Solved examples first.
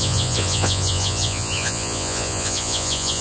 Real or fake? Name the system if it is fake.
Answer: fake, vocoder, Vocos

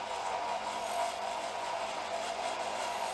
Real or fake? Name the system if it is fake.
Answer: fake, vocoder, Vocos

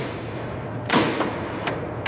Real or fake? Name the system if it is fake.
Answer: fake, vocoder, Vocos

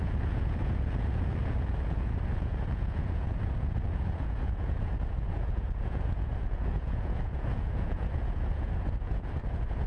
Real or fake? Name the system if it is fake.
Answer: fake, vocoder, Vocos